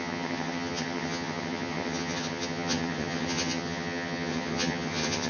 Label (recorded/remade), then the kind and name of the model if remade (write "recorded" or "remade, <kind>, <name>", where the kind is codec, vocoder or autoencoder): remade, vocoder, HiFi-GAN